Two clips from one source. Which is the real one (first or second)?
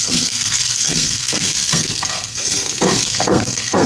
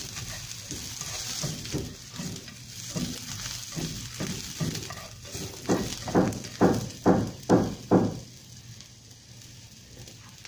second